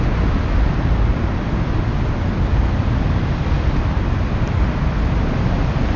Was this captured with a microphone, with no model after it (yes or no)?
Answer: yes